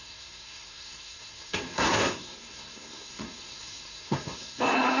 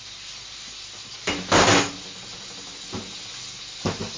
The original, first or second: second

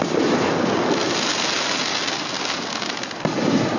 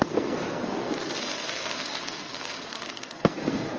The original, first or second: first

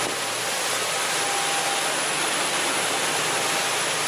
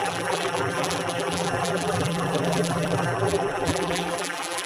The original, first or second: first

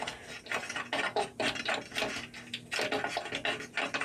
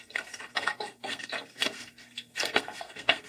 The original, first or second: first